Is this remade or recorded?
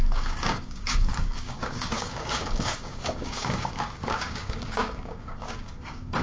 remade